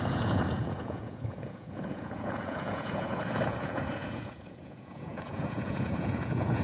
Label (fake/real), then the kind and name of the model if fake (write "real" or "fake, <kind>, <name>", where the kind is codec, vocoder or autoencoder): fake, vocoder, Vocos